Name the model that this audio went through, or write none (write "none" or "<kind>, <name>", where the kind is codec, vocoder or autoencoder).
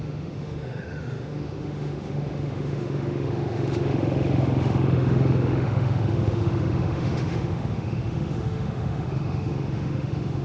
autoencoder, DAC-VAE